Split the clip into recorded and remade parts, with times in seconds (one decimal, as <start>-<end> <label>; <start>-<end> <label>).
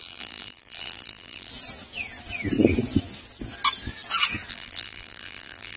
0.0-1.5 remade; 1.5-4.5 recorded; 4.5-5.8 remade